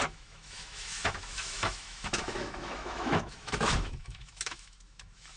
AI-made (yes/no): yes